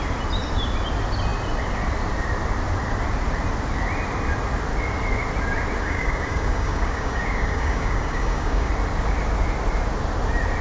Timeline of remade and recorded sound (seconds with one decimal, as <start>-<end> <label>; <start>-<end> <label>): 0.0-5.8 recorded; 5.8-8.7 remade; 8.7-10.6 recorded